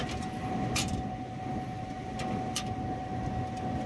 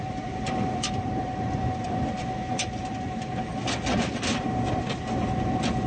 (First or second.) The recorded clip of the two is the first